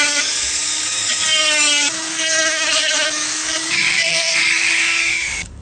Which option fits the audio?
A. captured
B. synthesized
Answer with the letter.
B